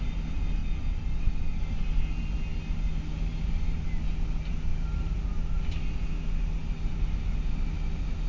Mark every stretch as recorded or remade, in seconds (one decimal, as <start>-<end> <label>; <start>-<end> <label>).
0.0-0.6 recorded; 0.6-1.6 remade; 1.6-4.7 recorded; 4.7-5.3 remade; 5.3-8.3 recorded